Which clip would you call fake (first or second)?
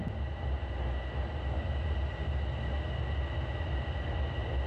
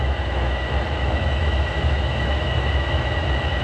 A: second